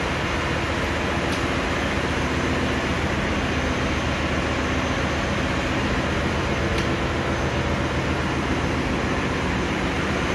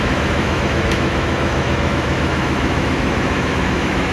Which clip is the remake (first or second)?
second